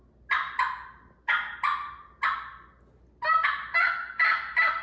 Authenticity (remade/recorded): recorded